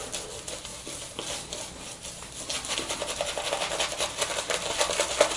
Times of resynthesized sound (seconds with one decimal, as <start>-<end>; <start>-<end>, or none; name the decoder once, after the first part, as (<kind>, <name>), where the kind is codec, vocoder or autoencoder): none